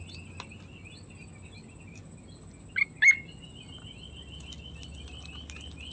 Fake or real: real